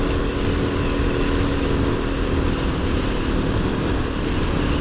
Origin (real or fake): real